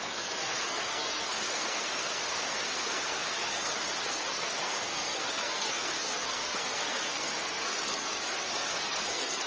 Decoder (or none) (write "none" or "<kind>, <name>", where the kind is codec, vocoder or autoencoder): codec, SNAC